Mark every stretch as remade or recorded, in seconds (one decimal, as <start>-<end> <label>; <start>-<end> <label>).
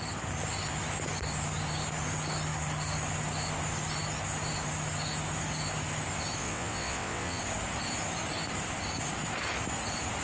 0.0-6.4 recorded; 6.4-7.4 remade; 7.4-10.2 recorded